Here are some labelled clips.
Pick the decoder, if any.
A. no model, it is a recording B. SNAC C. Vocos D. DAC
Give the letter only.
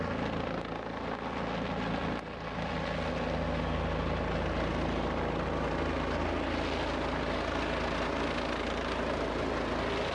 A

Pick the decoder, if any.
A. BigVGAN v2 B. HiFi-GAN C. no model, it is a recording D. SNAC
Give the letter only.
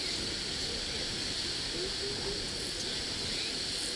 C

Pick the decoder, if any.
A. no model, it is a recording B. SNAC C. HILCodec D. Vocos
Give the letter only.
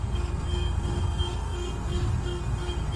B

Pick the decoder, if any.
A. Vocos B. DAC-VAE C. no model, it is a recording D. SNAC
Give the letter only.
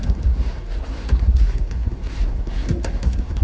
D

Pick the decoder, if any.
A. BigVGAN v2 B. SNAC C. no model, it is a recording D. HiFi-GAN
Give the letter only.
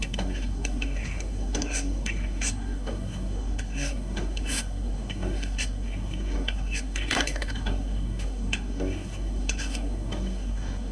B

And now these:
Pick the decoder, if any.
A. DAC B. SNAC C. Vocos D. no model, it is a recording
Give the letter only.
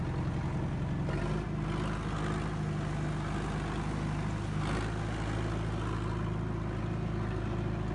D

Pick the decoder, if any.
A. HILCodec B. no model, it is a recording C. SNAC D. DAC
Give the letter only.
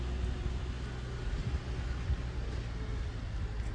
B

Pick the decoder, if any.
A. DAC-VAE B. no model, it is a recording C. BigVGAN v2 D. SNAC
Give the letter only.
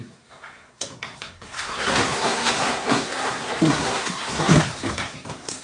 D